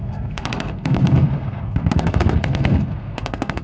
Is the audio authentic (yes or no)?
no